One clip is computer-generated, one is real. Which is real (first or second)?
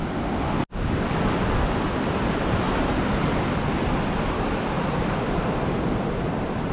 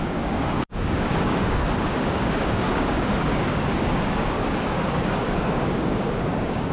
first